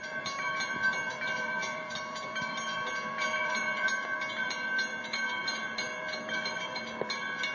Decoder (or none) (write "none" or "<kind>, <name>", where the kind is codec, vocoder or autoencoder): vocoder, BigVGAN v2